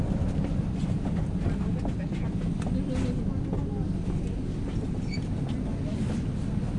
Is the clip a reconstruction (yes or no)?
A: no